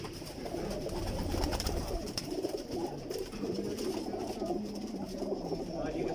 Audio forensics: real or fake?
fake